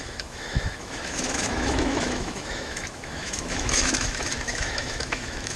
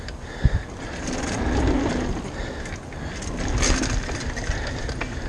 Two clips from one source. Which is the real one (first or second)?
second